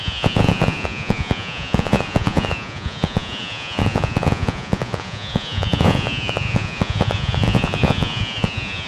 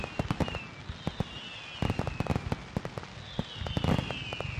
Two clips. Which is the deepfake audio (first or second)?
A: first